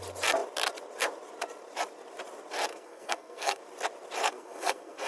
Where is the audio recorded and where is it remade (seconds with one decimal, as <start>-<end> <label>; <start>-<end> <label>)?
0.0-2.7 recorded; 2.7-3.6 remade; 3.6-4.2 recorded; 4.2-5.1 remade